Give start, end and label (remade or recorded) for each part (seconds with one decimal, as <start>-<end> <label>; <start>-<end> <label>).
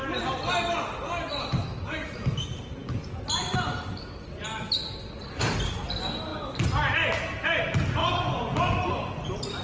0.0-9.6 recorded